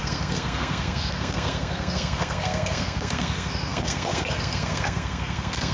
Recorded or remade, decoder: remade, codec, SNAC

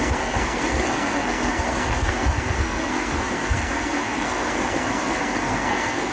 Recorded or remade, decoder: remade, codec, SNAC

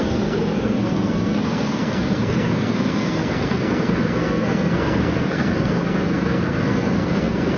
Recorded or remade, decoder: remade, codec, SNAC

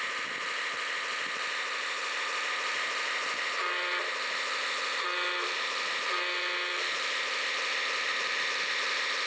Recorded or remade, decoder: recorded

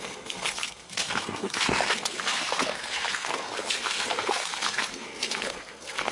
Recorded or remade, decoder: remade, codec, SNAC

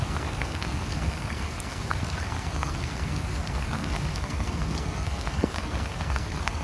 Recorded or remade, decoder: remade, codec, SNAC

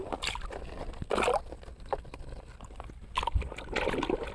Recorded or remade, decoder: recorded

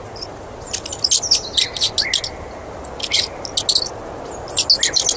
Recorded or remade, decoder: recorded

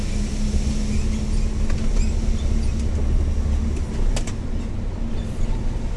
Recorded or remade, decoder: recorded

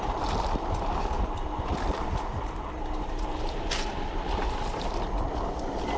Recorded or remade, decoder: recorded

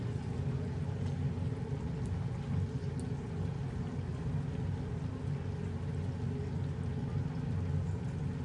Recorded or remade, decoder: recorded